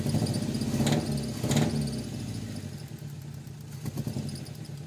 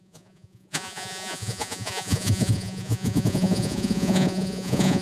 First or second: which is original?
first